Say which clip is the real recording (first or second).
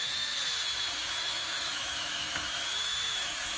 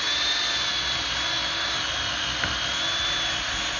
second